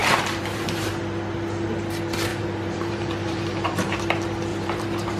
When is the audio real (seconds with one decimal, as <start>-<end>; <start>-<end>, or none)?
0.9-2.3; 4.0-4.5